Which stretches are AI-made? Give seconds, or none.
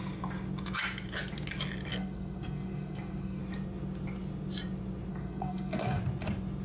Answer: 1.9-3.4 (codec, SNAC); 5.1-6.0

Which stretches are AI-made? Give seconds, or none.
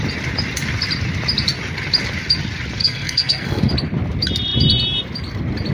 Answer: 2.8-3.7 (codec, SNAC)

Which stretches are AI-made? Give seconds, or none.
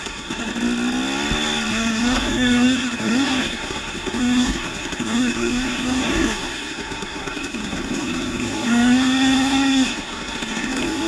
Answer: 0.0-0.5 (codec, SNAC); 1.7-11.1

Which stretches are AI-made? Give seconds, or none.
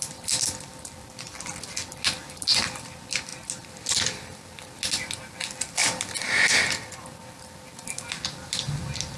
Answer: none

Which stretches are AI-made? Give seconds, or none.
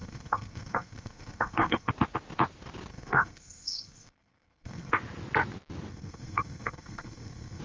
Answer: 0.0-1.9 (codec, SNAC); 2.9-4.9; 5.9-7.6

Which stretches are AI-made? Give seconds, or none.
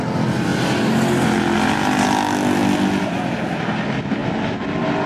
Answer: none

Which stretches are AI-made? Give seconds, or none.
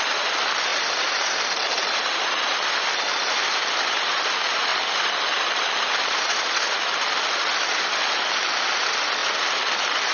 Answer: none